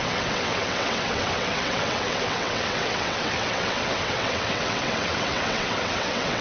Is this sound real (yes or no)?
no